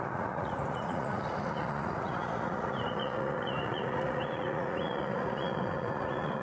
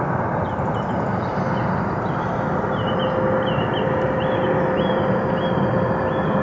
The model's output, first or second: first